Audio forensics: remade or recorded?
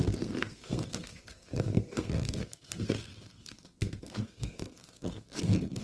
remade